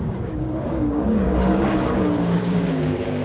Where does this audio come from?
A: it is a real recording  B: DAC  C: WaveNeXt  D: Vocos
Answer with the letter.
B